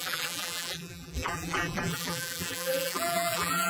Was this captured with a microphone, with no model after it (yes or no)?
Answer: no